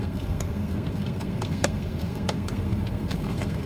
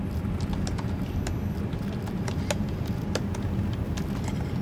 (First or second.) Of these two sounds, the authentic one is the second